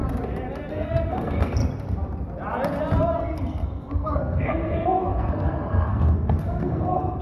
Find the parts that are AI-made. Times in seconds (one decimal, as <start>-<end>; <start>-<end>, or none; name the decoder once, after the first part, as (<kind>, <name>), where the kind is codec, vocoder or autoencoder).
0.7-1.6 (codec, SNAC); 3.2-7.2